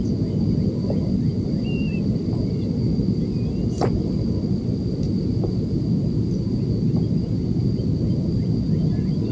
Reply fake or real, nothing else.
real